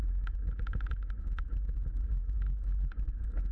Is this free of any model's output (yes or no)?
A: no